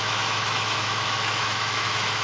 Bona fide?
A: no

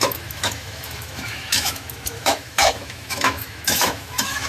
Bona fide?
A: no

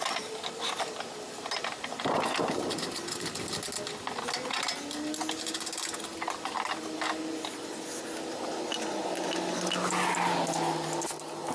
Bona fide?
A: yes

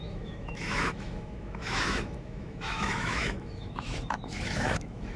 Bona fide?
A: no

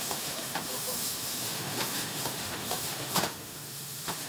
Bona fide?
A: no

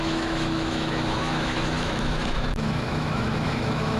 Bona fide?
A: no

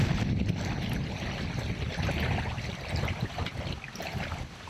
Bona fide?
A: yes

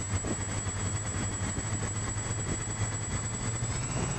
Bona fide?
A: yes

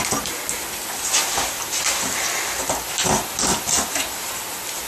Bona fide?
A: yes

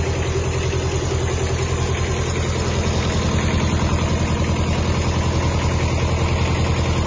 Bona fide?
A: yes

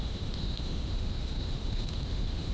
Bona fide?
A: no